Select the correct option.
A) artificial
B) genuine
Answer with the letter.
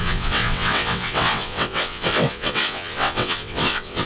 A